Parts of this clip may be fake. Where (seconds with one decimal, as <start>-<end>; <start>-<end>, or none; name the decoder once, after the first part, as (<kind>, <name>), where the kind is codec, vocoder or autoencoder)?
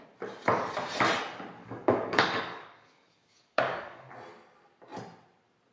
1.6-4.1 (codec, DAC)